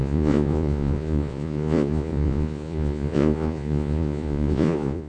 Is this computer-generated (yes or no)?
yes